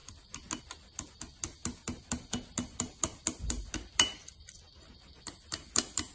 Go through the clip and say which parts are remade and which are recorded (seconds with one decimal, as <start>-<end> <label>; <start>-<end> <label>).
0.0-6.1 recorded